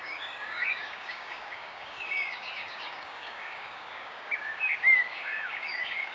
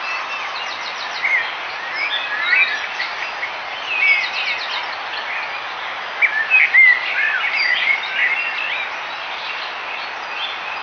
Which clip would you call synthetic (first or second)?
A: first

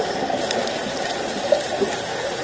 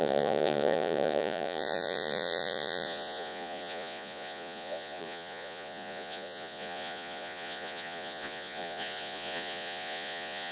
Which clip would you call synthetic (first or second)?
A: second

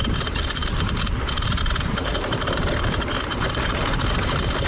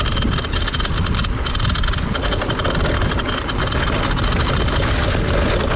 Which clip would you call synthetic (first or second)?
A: first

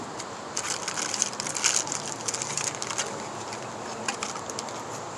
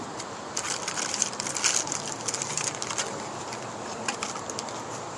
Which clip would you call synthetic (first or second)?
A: second